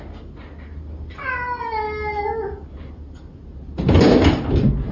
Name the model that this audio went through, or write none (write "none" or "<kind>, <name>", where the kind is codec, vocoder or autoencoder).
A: none